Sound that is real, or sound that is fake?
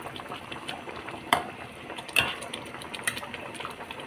fake